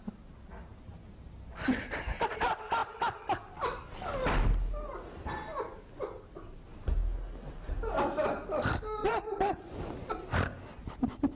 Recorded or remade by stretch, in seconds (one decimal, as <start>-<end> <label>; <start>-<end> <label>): 0.0-9.0 recorded; 9.0-9.8 remade; 9.8-11.4 recorded